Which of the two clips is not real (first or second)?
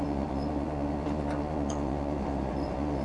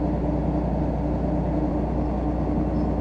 first